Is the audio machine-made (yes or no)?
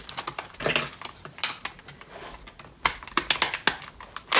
no